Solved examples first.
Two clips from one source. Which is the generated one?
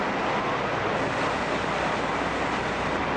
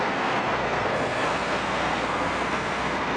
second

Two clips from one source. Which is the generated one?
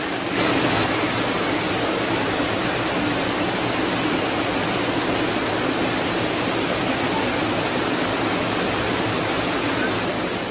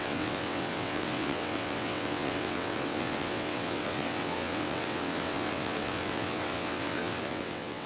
second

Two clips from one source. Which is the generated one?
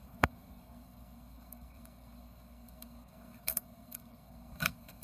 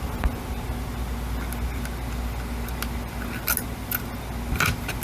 first